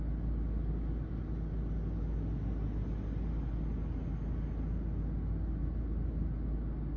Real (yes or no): yes